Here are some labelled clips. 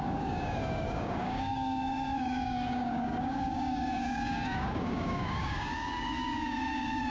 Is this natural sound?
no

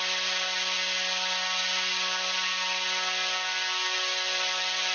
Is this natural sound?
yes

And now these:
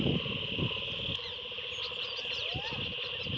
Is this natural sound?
yes